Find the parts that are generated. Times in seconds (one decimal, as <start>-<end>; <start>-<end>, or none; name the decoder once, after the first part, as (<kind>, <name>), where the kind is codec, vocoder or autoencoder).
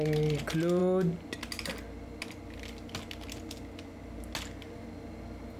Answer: none